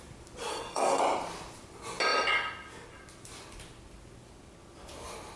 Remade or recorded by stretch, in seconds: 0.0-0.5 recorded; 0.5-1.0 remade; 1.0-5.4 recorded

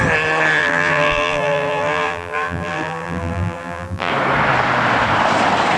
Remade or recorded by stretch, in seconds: 0.0-0.6 recorded; 0.6-4.1 remade; 4.1-5.8 recorded